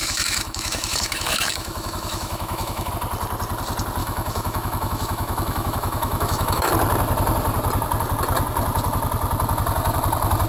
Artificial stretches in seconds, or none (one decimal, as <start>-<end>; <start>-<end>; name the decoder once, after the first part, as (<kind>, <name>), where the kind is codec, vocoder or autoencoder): 0.0-2.9 (autoencoder, DAC-VAE); 4.0-6.7